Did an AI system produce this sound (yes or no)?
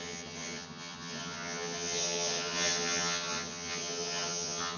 yes